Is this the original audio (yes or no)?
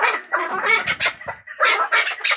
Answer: yes